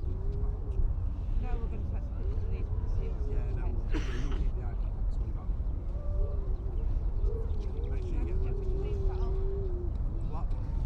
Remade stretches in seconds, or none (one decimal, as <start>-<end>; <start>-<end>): 3.7-7.7